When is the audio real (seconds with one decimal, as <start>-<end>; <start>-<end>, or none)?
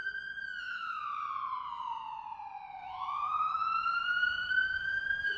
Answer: 0.0-0.6; 1.2-2.9